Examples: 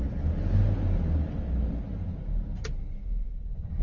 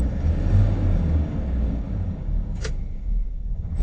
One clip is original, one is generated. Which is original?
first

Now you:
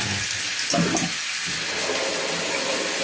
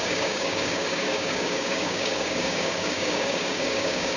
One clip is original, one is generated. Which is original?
first